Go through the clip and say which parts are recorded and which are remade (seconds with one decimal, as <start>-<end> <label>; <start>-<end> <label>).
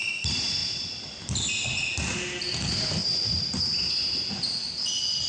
0.0-5.3 recorded